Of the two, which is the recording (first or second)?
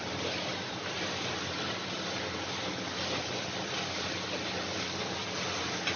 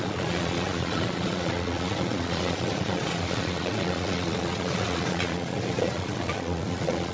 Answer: first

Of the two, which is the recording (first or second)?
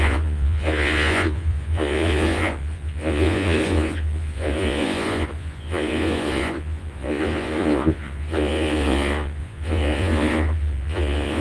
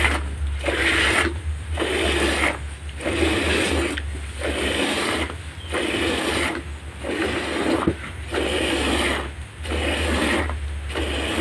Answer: second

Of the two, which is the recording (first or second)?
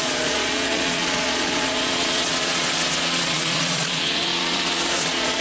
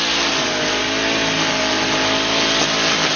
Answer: second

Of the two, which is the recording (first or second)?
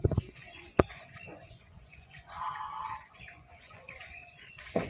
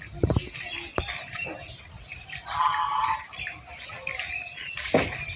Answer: second